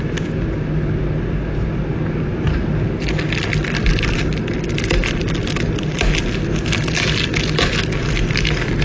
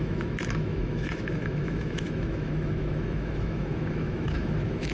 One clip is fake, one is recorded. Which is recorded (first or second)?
first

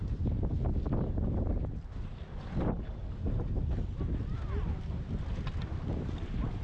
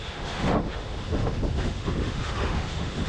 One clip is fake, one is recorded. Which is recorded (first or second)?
first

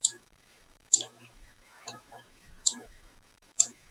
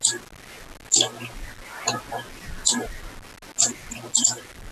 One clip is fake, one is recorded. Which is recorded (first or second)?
second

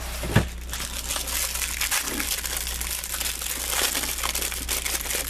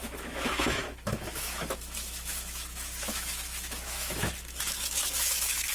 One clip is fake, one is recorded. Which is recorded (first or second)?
first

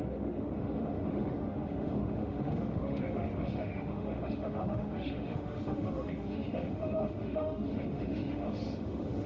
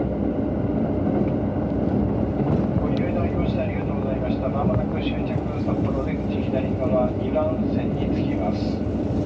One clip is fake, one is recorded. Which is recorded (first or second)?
second